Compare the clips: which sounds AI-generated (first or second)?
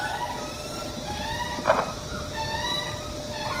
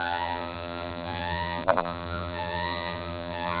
second